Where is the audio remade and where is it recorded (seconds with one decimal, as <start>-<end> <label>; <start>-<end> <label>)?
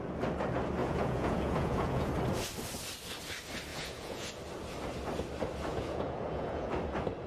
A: 0.0-0.8 recorded; 0.8-2.1 remade; 2.1-3.7 recorded; 3.7-4.3 remade; 4.3-5.7 recorded; 5.7-6.7 remade; 6.7-7.3 recorded